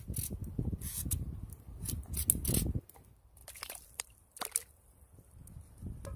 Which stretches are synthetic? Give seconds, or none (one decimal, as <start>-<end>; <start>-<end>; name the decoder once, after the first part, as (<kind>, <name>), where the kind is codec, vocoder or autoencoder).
3.4-4.7 (vocoder, BigVGAN v2)